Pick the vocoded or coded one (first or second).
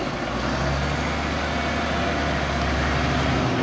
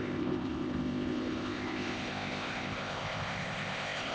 second